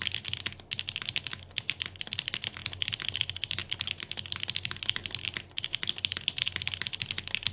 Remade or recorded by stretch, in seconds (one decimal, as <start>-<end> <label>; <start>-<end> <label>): 0.0-7.5 recorded